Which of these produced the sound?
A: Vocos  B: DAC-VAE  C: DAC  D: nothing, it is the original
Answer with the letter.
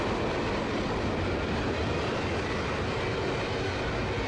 D